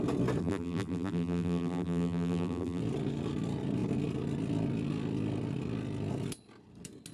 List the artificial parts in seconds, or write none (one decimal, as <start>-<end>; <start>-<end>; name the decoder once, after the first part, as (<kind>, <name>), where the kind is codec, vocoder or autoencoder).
0.4-2.8 (vocoder, BigVGAN v2)